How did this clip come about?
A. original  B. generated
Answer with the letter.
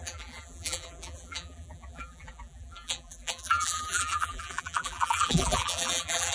B